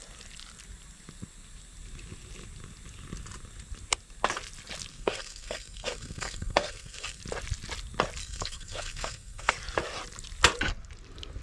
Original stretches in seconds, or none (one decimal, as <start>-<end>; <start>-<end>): 0.0-4.9; 7.2-8.2; 9.5-11.4